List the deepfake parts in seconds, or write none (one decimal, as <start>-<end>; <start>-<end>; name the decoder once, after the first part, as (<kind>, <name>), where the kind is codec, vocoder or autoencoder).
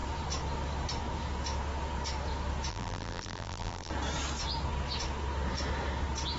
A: 2.7-3.9 (vocoder, BigVGAN v2)